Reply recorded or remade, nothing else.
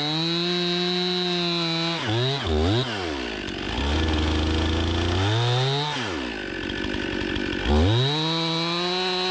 recorded